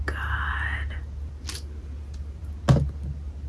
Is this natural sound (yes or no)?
yes